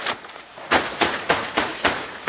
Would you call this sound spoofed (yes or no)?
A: yes